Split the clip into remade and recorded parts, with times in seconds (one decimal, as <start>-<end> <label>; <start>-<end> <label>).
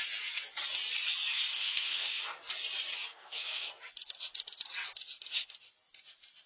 0.0-1.3 recorded; 1.3-2.2 remade; 2.2-3.1 recorded; 3.1-3.7 remade; 3.7-6.5 recorded